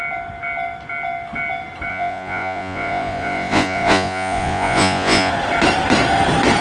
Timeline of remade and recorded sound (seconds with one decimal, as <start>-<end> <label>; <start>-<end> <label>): 0.0-1.9 recorded; 1.9-5.3 remade; 5.3-6.6 recorded